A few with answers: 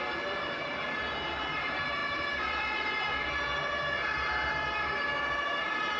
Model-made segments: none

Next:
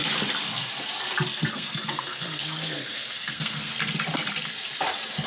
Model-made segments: 1.5-3.7 (codec, SNAC)